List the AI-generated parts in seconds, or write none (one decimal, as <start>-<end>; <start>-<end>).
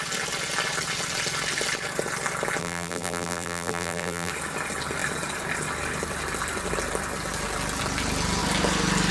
2.6-4.3